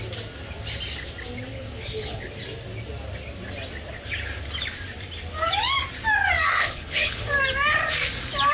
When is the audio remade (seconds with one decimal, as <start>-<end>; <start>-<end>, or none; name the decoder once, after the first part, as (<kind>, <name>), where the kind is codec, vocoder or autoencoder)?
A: 1.5-2.3 (codec, HILCodec); 6.5-7.3